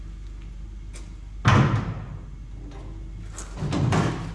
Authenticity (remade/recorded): recorded